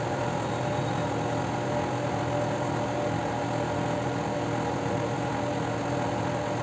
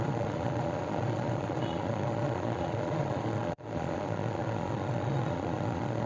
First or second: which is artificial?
second